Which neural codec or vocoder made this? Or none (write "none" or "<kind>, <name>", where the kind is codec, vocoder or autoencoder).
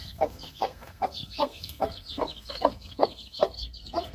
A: codec, SNAC